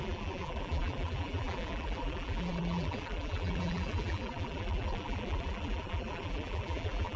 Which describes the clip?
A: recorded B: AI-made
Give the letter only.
B